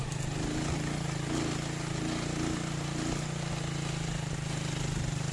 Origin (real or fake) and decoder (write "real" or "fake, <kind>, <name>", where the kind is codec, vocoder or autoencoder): real